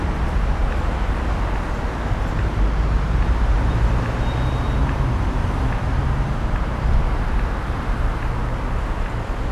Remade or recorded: recorded